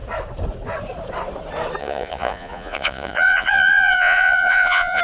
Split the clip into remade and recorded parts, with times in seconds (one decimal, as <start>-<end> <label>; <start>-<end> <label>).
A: 0.0-1.8 recorded; 1.8-5.0 remade